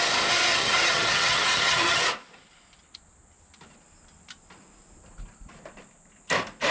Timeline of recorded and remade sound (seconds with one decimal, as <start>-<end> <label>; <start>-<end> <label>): 0.0-0.5 recorded; 0.5-2.0 remade; 2.0-6.7 recorded